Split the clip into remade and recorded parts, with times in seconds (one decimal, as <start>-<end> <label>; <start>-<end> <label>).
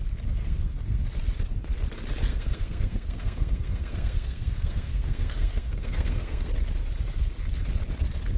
0.0-0.4 recorded; 0.4-1.1 remade; 1.1-2.3 recorded; 2.3-6.5 remade; 6.5-8.4 recorded